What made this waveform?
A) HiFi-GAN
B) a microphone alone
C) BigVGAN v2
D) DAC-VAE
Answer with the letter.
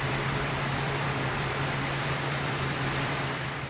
C